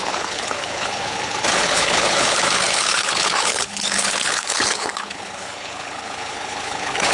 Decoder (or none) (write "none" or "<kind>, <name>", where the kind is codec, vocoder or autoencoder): codec, HILCodec